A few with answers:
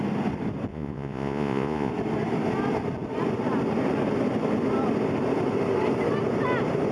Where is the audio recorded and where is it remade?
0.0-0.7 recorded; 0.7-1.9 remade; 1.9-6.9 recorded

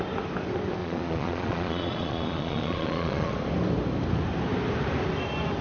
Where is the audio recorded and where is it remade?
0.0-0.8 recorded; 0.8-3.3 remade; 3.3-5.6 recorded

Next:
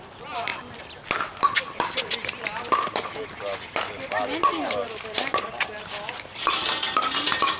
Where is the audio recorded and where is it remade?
0.0-7.6 recorded

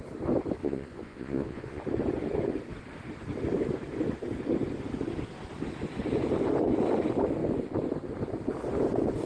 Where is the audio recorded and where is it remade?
0.0-0.6 recorded; 0.6-1.8 remade; 1.8-9.2 recorded